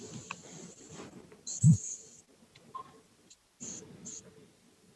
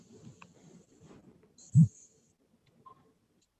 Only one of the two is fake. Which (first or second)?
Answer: second